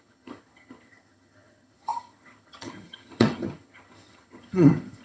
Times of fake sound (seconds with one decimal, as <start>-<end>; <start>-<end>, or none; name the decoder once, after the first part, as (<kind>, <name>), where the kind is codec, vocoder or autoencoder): 0.0-5.0 (vocoder, HiFi-GAN)